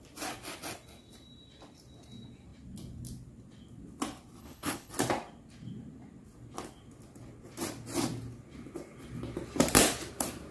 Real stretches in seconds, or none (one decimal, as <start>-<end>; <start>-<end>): 0.0-4.4; 4.9-10.5